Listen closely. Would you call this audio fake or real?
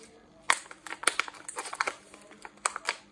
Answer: real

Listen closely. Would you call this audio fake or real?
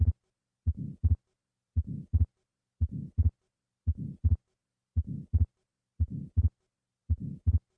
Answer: real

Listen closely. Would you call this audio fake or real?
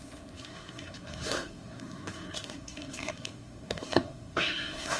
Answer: fake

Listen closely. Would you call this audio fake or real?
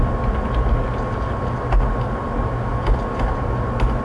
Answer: real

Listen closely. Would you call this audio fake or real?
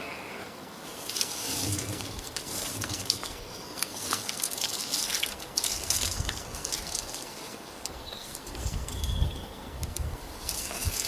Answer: fake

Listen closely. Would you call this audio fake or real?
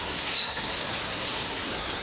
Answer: fake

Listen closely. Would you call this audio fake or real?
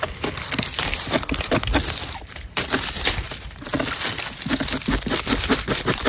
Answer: real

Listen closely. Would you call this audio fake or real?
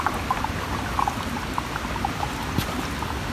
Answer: real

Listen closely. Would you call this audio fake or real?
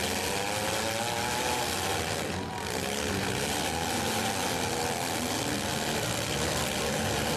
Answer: real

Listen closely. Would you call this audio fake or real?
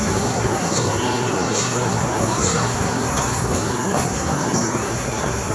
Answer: fake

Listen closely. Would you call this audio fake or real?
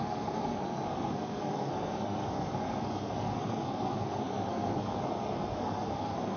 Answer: fake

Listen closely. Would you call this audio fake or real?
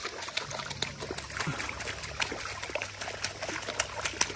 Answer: real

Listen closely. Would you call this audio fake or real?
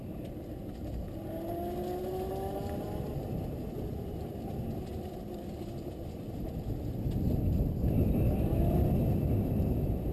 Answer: real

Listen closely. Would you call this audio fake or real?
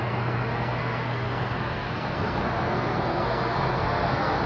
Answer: fake